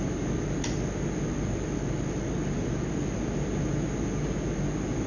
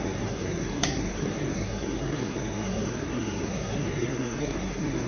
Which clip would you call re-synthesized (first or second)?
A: second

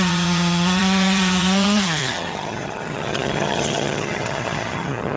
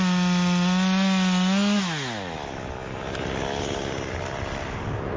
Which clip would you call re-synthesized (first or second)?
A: first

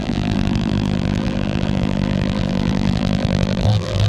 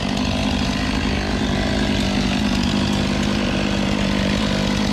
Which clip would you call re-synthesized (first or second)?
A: first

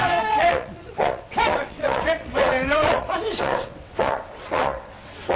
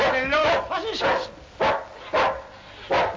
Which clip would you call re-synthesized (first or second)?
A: first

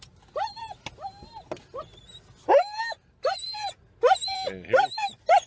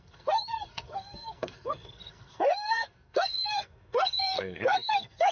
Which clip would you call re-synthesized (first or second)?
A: second